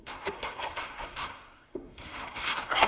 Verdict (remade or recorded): remade